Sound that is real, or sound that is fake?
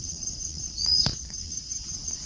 fake